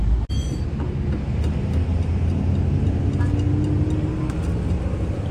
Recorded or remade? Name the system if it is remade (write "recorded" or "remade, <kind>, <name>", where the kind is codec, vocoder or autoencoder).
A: recorded